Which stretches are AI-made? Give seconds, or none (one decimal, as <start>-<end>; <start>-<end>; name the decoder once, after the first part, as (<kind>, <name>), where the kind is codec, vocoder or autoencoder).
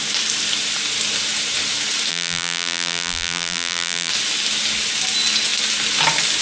2.1-4.1 (vocoder, BigVGAN v2)